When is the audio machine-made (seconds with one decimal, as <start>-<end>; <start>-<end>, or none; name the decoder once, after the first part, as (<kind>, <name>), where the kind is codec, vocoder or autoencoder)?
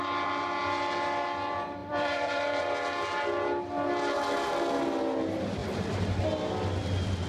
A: 1.8-2.6 (vocoder, BigVGAN v2); 5.6-6.5